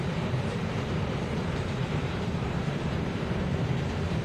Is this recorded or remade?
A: remade